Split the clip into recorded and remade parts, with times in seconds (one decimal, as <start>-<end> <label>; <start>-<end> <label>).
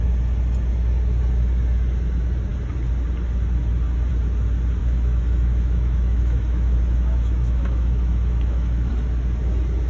0.0-4.8 recorded; 4.8-8.9 remade; 8.9-9.9 recorded